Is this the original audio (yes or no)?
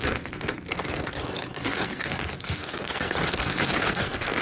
no